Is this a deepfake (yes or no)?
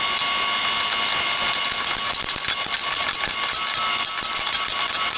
no